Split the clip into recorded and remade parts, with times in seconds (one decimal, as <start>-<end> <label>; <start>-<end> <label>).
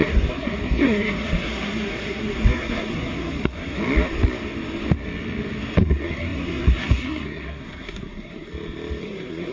0.0-3.8 remade; 3.8-5.8 recorded; 5.8-8.5 remade; 8.5-9.0 recorded; 9.0-9.5 remade